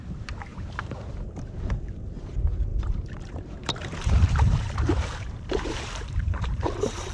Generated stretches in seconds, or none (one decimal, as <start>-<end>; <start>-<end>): 0.5-1.1; 2.7-7.1